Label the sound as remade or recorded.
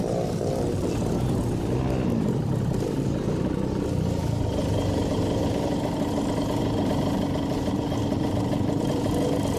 recorded